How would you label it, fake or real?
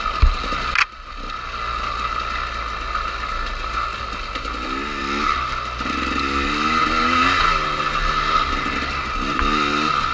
real